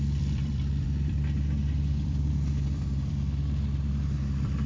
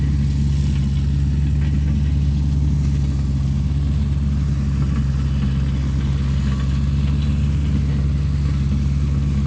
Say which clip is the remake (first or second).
first